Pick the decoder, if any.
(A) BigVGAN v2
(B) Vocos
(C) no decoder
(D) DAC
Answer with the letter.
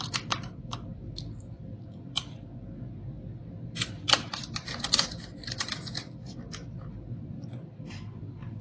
A